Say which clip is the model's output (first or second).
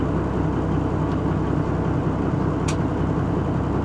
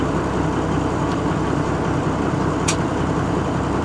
second